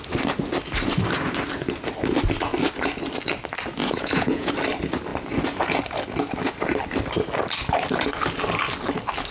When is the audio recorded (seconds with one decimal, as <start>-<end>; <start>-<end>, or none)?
0.0-3.8; 4.5-9.3